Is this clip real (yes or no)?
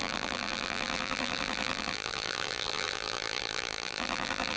no